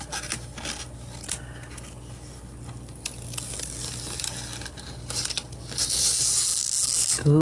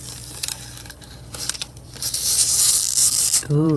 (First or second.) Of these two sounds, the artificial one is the second